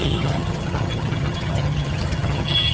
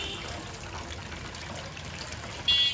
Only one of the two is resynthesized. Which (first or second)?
first